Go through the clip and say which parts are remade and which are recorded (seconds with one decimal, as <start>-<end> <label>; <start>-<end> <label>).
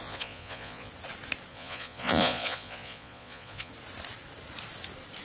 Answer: 0.0-0.9 remade; 0.9-1.5 recorded; 1.5-3.7 remade; 3.7-5.2 recorded